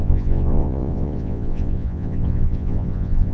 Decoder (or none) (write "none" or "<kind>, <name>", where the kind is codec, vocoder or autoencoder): vocoder, Vocos